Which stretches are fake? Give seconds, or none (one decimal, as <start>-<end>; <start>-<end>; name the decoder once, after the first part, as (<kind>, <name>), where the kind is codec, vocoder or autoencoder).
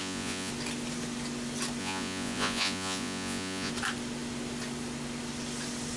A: 0.0-0.5 (vocoder, Vocos); 1.8-3.7